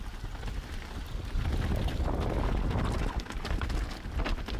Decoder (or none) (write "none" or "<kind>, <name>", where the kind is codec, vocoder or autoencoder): none